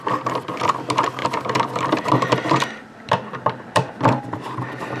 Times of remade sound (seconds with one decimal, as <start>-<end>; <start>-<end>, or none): 1.2-4.2